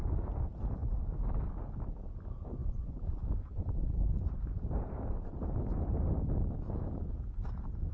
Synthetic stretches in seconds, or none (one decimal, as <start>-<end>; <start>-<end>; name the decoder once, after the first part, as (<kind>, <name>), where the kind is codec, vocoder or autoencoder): 0.8-1.4 (vocoder, BigVGAN v2); 2.6-6.2